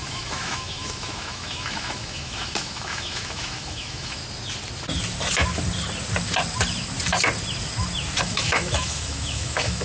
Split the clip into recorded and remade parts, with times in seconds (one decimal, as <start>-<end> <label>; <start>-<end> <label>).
0.0-4.2 remade; 4.2-8.2 recorded; 8.2-9.8 remade

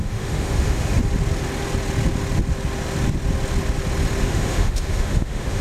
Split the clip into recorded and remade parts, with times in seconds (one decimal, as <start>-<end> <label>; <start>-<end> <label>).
0.0-1.0 remade; 1.0-4.2 recorded; 4.2-5.6 remade

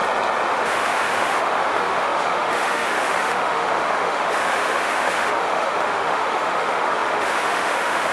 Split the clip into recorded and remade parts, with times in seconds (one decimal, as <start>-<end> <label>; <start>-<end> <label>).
0.0-0.5 recorded; 0.5-8.1 remade

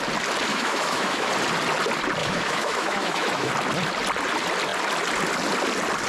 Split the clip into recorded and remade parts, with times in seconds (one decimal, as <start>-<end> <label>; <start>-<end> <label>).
0.0-0.5 recorded; 0.5-1.3 remade; 1.3-2.2 recorded; 2.2-3.5 remade; 3.5-6.1 recorded

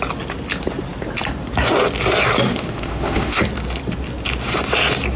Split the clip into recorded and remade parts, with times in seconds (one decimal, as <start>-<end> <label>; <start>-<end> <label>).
0.0-2.5 recorded; 2.5-3.4 remade; 3.4-5.2 recorded

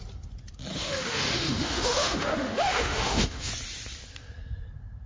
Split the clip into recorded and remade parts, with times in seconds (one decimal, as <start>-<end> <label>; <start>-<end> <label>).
0.0-0.7 recorded; 0.7-3.5 remade; 3.5-5.1 recorded

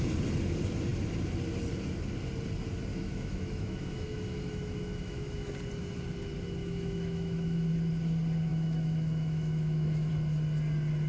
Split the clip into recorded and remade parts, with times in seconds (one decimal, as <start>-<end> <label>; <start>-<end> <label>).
0.0-2.9 recorded; 2.9-5.5 remade; 5.5-6.6 recorded; 6.6-7.7 remade; 7.7-8.5 recorded; 8.5-10.1 remade; 10.1-11.1 recorded

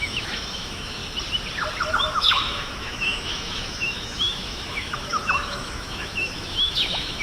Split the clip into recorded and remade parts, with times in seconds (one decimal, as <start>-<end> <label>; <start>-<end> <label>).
0.0-1.0 remade; 1.0-2.1 recorded; 2.1-7.2 remade